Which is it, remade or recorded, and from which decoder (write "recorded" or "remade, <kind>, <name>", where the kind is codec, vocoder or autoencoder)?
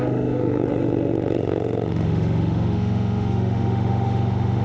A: remade, autoencoder, DAC-VAE